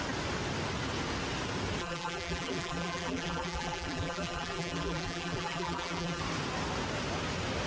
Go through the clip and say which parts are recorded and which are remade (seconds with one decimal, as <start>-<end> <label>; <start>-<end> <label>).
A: 0.0-1.8 recorded; 1.8-6.2 remade; 6.2-7.7 recorded